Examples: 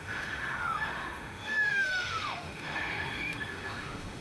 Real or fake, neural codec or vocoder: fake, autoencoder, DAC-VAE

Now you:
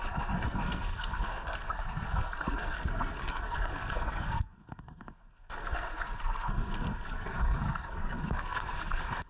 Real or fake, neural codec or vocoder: fake, codec, SNAC